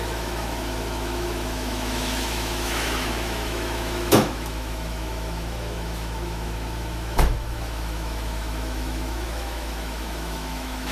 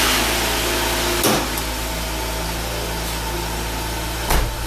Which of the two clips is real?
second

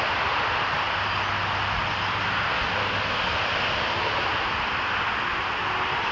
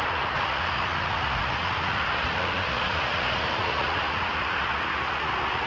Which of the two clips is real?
first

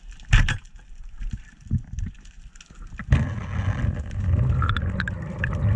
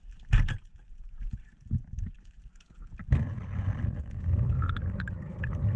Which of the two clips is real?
first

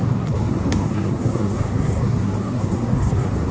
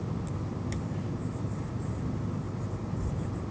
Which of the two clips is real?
second